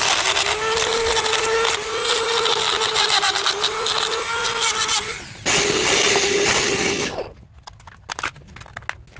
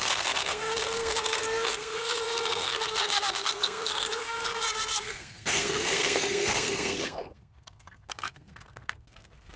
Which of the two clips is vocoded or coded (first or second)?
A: second